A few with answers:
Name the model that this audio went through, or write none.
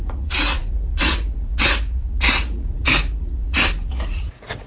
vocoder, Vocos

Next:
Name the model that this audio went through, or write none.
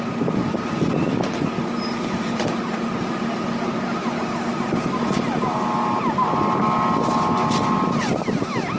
none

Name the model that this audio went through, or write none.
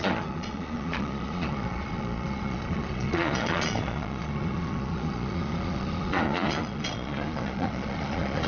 vocoder, Vocos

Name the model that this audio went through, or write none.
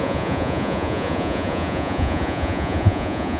vocoder, Vocos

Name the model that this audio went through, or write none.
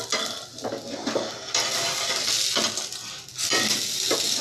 none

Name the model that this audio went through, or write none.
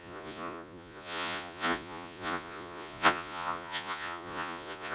vocoder, Vocos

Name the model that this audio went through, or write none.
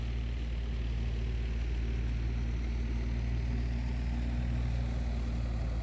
none